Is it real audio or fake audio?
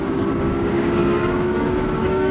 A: fake